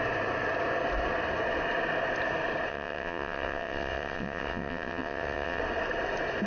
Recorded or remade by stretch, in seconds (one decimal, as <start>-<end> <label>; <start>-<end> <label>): 0.0-2.7 recorded; 2.7-5.6 remade; 5.6-6.5 recorded